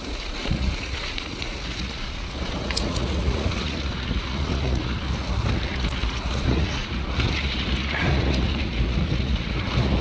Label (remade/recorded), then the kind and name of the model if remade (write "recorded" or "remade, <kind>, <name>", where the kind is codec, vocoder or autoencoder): remade, vocoder, Vocos